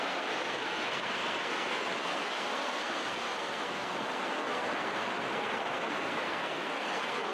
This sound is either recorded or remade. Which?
remade